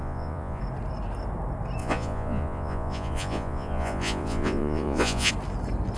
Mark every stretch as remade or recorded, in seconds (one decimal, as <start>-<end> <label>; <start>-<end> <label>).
0.0-0.6 remade; 0.6-1.8 recorded; 1.8-5.3 remade; 5.3-6.0 recorded